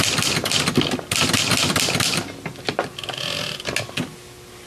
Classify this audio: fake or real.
real